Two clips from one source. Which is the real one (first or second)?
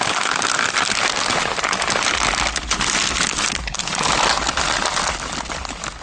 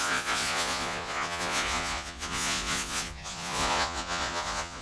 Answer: first